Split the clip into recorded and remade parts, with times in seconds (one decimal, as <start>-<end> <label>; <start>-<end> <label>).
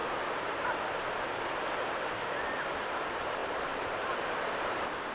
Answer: 0.0-2.0 remade; 2.0-3.4 recorded; 3.4-5.1 remade